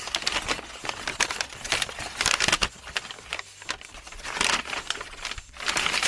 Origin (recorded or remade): recorded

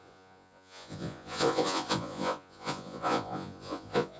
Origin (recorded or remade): remade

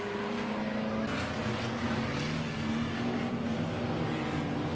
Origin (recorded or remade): recorded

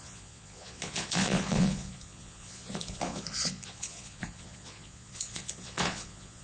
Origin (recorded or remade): remade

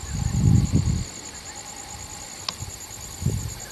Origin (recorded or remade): recorded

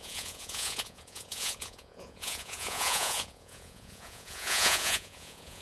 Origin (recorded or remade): remade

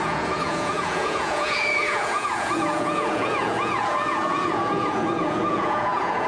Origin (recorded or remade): remade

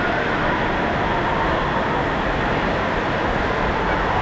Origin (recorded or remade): recorded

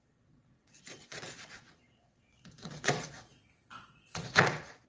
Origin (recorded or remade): remade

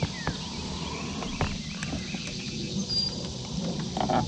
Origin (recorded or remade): recorded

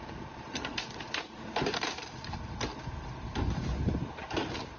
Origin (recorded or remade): recorded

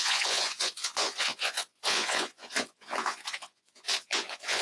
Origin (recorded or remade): remade